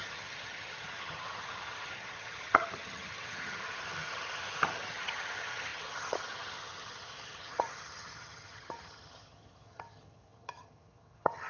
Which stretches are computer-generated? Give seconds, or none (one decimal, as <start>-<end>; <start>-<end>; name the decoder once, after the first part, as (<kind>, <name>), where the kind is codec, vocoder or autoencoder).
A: 0.0-11.5 (vocoder, HiFi-GAN)